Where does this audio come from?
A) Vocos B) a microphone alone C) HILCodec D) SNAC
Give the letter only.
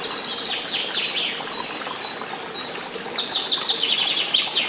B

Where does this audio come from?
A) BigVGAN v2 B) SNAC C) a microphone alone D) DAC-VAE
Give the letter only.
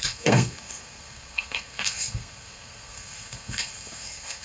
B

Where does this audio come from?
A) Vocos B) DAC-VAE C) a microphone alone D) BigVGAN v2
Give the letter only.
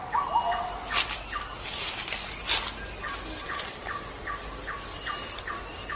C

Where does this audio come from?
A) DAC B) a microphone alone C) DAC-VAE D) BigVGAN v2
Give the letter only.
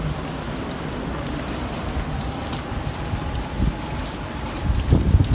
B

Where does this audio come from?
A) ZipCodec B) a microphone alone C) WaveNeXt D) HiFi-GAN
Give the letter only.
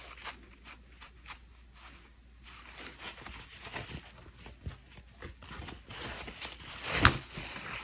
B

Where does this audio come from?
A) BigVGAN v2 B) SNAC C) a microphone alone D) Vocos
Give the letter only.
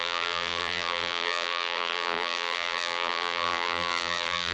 A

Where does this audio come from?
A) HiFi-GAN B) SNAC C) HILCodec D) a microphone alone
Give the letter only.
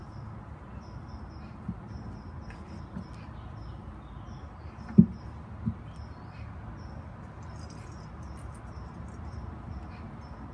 D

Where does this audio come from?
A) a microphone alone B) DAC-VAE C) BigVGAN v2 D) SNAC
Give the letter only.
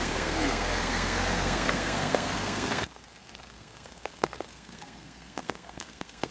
D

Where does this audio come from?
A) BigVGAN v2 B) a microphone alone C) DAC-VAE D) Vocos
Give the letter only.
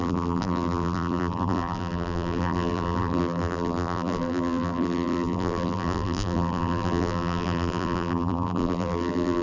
A